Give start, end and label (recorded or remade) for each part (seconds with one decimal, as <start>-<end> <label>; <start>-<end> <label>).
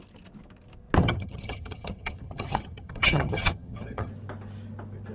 0.0-1.0 recorded; 1.0-4.1 remade; 4.1-5.1 recorded